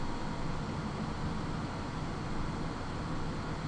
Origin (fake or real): real